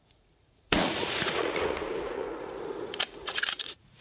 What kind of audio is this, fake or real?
fake